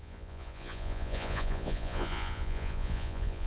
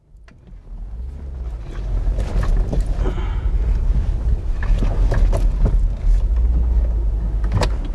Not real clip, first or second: first